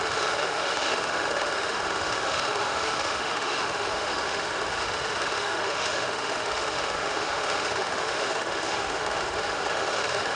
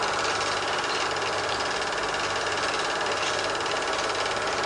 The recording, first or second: second